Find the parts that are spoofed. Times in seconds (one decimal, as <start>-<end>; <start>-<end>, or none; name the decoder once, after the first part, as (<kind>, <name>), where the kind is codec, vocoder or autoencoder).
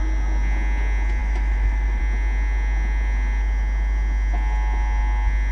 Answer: 1.2-2.0 (autoencoder, DAC-VAE)